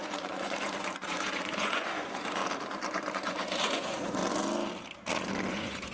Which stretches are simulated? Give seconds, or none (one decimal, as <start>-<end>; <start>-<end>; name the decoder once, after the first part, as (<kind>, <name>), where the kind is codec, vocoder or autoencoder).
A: 0.0-2.4 (vocoder, Vocos); 3.1-4.2; 5.5-5.9